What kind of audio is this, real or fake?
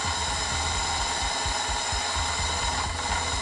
real